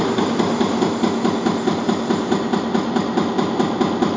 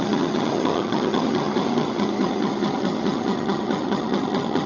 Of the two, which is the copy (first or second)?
second